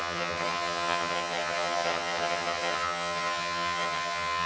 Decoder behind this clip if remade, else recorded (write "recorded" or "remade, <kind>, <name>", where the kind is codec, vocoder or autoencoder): remade, vocoder, HiFi-GAN